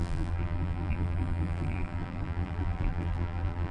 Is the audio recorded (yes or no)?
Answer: no